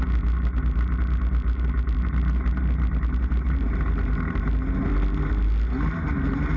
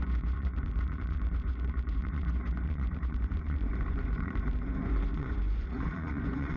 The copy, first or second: second